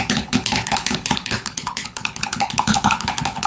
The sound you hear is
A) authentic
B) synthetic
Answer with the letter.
B